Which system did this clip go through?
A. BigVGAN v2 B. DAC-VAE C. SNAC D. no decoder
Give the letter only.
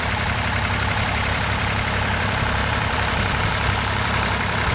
A